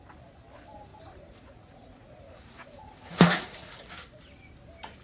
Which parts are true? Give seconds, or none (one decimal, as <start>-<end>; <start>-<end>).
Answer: 0.0-0.9; 3.9-5.0